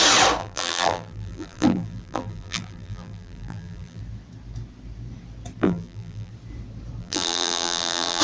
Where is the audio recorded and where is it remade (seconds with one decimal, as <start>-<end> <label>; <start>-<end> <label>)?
0.0-0.4 recorded; 0.4-4.0 remade; 4.0-5.6 recorded; 5.6-6.3 remade; 6.3-7.0 recorded; 7.0-8.2 remade